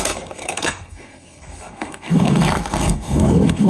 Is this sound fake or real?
fake